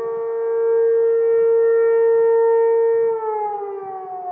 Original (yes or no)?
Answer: yes